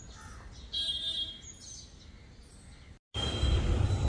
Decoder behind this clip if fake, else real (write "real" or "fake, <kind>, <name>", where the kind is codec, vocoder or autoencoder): real